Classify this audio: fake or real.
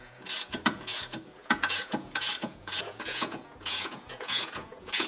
fake